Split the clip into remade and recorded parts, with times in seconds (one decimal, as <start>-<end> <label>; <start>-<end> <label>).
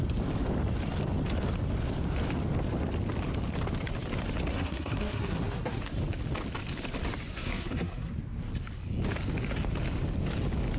0.0-4.5 recorded; 4.5-5.8 remade; 5.8-7.3 recorded; 7.3-8.1 remade; 8.1-10.8 recorded